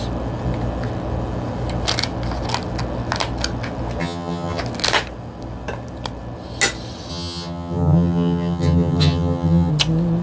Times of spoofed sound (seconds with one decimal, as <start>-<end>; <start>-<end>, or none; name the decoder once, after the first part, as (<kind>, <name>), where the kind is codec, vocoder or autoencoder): 4.0-4.6 (vocoder, HiFi-GAN); 7.1-9.7